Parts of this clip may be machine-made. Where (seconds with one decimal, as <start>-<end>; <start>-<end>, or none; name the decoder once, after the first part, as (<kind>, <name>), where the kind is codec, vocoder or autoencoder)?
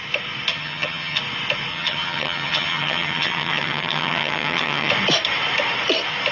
0.5-1.2 (vocoder, HiFi-GAN); 1.7-4.9